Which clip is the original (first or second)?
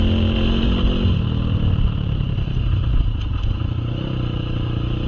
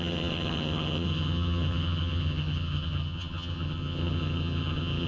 first